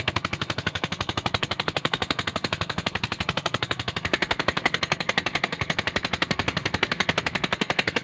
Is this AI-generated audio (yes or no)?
yes